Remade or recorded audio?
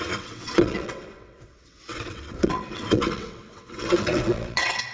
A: remade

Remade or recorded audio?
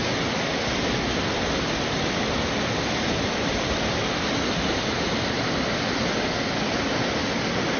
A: recorded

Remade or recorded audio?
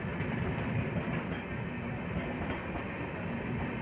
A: recorded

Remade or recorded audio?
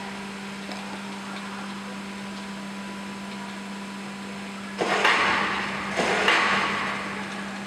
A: recorded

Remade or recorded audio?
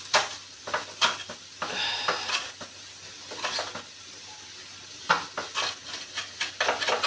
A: recorded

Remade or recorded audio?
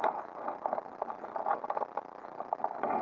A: recorded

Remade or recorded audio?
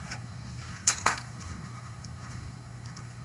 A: remade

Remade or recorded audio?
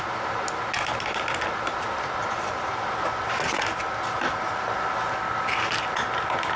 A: recorded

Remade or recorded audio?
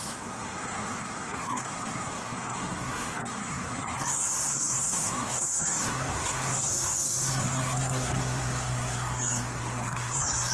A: remade